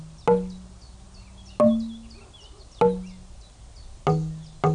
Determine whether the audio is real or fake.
real